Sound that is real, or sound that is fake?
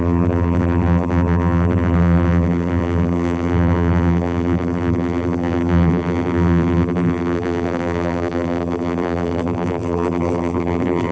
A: fake